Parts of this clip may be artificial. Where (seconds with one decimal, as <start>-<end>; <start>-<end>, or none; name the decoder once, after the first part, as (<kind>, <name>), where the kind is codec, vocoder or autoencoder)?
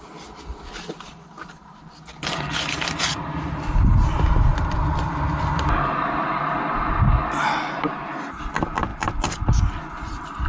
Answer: none